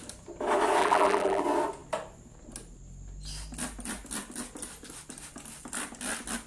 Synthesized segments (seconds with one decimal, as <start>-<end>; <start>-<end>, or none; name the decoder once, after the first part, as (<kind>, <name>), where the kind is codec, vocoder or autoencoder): 0.8-1.4 (vocoder, BigVGAN v2)